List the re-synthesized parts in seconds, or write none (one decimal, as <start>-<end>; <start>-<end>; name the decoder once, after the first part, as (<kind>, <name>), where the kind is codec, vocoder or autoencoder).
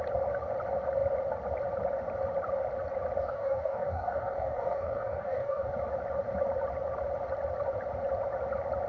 3.2-5.7 (codec, DAC)